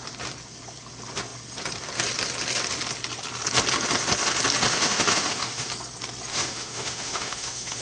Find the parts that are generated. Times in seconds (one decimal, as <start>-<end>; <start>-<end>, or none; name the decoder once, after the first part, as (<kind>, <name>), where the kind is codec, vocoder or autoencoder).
4.7-5.7 (autoencoder, DAC-VAE); 6.3-7.8